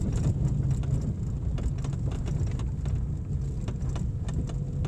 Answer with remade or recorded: recorded